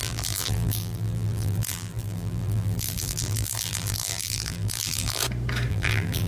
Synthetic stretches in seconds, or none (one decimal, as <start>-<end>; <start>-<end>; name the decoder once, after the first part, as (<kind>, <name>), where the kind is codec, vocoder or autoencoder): 0.0-5.2 (vocoder, BigVGAN v2); 5.7-6.3